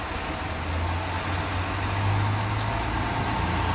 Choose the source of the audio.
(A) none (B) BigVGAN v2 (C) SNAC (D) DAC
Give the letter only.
A